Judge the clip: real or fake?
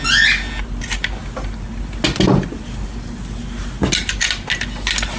real